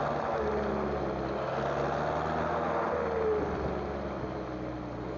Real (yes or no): yes